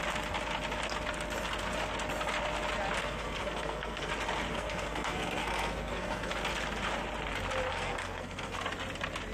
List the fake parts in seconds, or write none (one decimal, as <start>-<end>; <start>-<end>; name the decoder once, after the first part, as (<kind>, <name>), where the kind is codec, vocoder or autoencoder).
3.0-4.1 (codec, SNAC); 4.5-6.3; 7.7-8.6